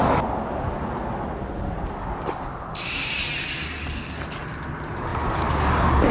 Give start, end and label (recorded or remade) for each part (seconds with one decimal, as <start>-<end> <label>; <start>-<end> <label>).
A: 0.0-5.1 recorded; 5.1-6.1 remade